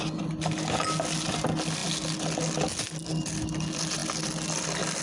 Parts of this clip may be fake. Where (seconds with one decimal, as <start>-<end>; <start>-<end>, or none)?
none